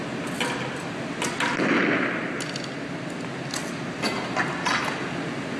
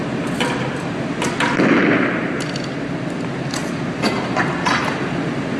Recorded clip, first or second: first